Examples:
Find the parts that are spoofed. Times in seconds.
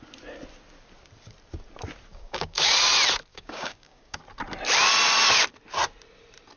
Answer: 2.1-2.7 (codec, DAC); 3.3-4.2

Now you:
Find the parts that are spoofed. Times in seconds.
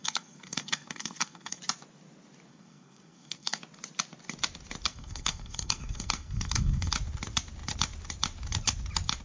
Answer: 0.0-1.6 (codec, SNAC); 2.5-3.6; 4.9-6.9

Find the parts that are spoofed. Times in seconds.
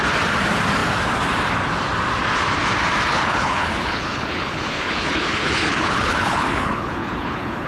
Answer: 3.1-7.7 (codec, HILCodec)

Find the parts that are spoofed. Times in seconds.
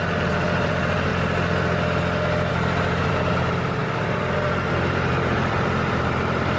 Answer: 0.0-1.1 (vocoder, BigVGAN v2); 2.5-6.6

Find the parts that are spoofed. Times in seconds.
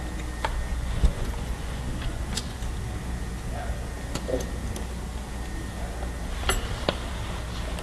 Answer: 0.7-2.6 (vocoder, Vocos)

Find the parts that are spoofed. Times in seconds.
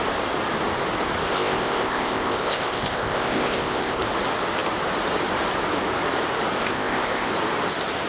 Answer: 1.3-4.0 (codec, ZipCodec); 6.6-7.3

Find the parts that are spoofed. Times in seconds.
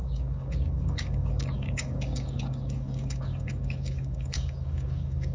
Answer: 0.0-5.3 (codec, DAC)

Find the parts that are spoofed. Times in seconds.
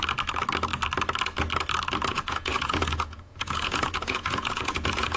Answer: 2.1-5.2 (vocoder, Vocos)